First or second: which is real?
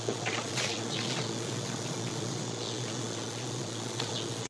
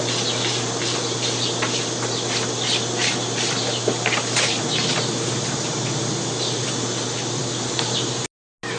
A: second